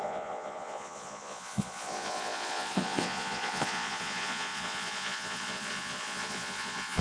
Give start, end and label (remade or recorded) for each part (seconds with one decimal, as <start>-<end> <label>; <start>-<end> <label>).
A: 0.0-7.0 remade